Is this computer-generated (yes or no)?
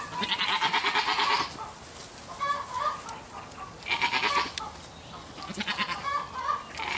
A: no